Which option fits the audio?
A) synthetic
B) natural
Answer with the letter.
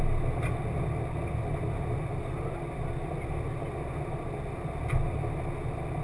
B